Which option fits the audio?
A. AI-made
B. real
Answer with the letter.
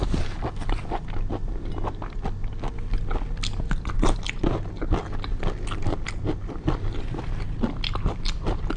B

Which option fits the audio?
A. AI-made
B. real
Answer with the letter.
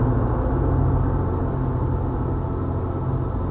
B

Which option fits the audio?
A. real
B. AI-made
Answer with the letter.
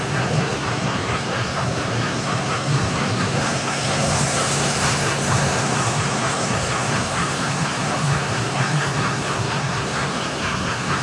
B